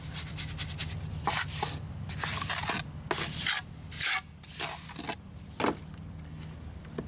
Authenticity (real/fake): real